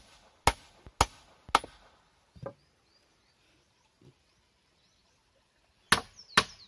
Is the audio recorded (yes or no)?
yes